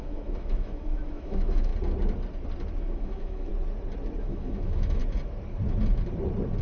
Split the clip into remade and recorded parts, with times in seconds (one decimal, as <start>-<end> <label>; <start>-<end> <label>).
0.0-1.7 remade; 1.7-2.8 recorded; 2.8-3.5 remade; 3.5-4.2 recorded; 4.2-5.0 remade; 5.0-6.6 recorded